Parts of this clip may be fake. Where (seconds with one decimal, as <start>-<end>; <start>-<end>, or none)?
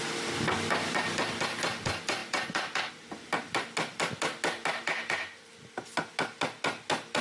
none